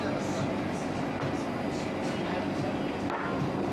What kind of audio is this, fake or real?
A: real